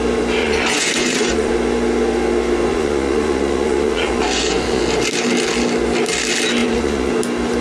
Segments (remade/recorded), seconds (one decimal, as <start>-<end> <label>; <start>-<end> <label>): 0.0-0.4 recorded; 0.4-1.5 remade; 1.5-2.7 recorded; 2.7-4.8 remade; 4.8-6.6 recorded; 6.6-7.1 remade; 7.1-7.6 recorded